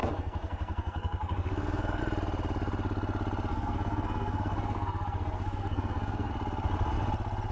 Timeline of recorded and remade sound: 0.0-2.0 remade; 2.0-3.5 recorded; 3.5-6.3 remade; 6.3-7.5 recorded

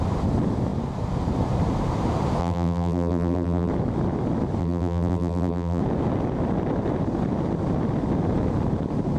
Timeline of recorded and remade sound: 0.0-2.4 recorded; 2.4-3.7 remade; 3.7-4.6 recorded; 4.6-5.8 remade; 5.8-9.2 recorded

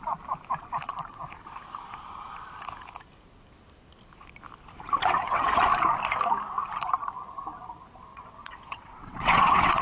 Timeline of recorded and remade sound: 0.0-5.0 recorded; 5.0-5.7 remade; 5.7-8.1 recorded; 8.1-9.8 remade

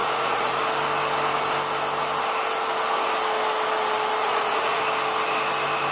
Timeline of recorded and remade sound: 0.0-0.6 remade; 0.6-4.2 recorded; 4.2-4.8 remade; 4.8-5.9 recorded

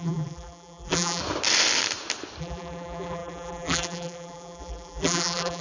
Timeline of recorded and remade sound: 0.0-1.2 remade; 1.2-2.4 recorded; 2.4-5.6 remade

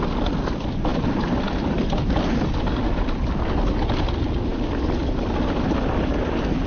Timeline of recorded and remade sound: 0.0-6.7 recorded